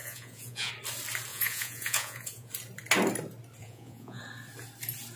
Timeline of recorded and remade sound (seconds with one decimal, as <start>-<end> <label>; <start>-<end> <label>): 0.0-0.7 remade; 0.7-1.3 recorded; 1.3-2.5 remade; 2.5-3.6 recorded; 3.6-4.2 remade; 4.2-5.2 recorded